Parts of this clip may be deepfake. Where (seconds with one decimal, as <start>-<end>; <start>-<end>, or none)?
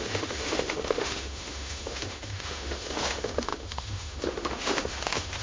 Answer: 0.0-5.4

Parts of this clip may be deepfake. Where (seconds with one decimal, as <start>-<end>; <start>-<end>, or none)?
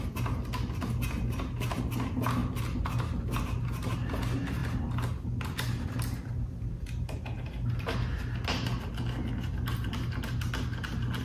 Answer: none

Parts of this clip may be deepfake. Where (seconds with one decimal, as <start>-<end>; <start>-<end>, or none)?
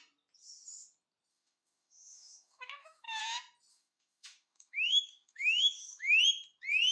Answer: 1.3-3.2; 3.7-6.2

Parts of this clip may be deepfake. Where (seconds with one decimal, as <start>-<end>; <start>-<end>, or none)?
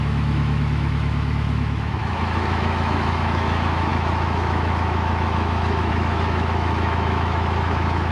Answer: 0.0-8.1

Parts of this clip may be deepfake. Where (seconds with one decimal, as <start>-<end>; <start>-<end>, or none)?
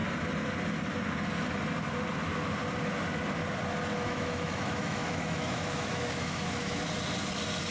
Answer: 3.9-6.8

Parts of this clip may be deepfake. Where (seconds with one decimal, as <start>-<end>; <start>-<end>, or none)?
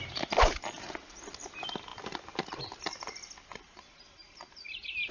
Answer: none